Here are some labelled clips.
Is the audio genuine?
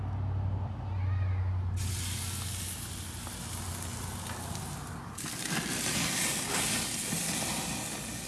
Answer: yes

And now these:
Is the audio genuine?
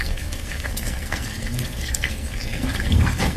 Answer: no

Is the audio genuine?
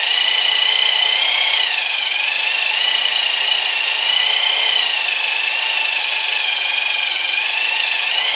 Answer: yes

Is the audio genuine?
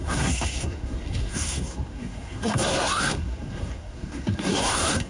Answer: no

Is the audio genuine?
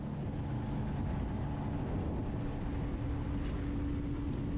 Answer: yes